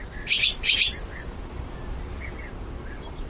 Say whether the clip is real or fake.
real